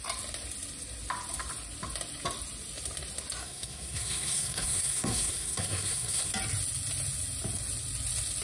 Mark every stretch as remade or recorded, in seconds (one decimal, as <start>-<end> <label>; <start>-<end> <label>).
0.0-3.4 recorded; 3.4-6.3 remade; 6.3-8.4 recorded

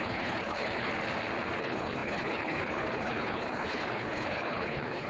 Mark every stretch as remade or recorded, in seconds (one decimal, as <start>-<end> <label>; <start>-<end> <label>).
0.0-0.9 remade; 0.9-1.6 recorded; 1.6-5.1 remade

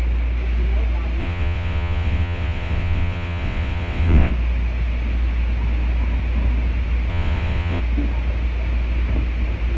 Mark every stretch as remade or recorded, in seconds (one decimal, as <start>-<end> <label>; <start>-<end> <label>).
0.0-1.2 recorded; 1.2-4.3 remade; 4.3-7.1 recorded; 7.1-7.8 remade; 7.8-9.8 recorded

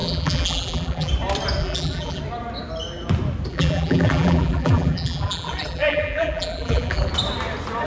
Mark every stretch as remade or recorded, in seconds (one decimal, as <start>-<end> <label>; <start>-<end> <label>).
0.0-1.1 remade; 1.1-1.6 recorded; 1.6-2.2 remade; 2.2-3.5 recorded; 3.5-7.1 remade; 7.1-7.9 recorded